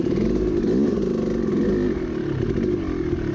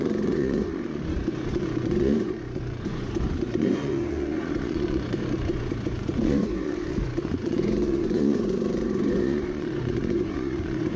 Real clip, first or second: first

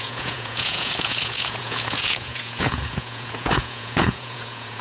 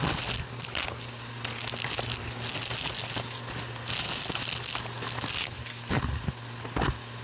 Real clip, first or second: second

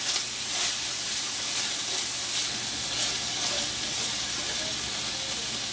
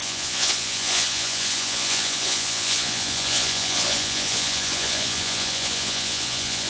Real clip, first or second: first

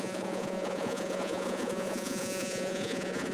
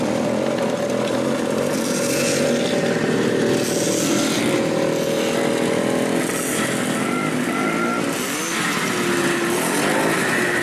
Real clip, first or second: second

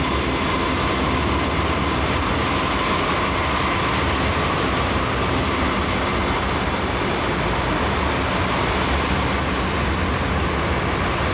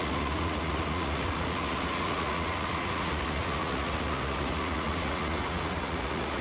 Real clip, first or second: first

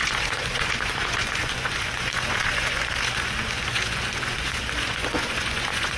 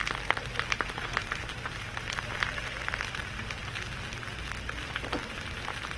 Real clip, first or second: second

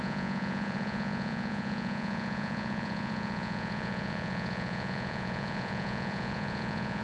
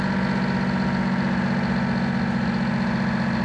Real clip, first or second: second